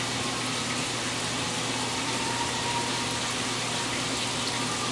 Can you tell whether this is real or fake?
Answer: real